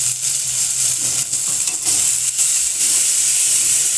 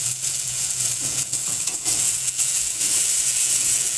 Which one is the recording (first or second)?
first